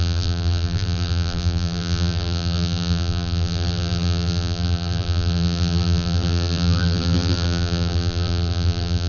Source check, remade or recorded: remade